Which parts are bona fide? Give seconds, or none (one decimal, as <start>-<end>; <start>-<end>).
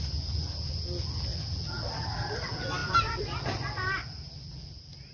0.0-5.1